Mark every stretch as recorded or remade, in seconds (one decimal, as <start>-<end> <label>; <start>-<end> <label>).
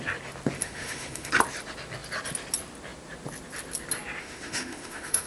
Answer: 0.0-0.6 recorded; 0.6-1.3 remade; 1.3-4.2 recorded; 4.2-5.3 remade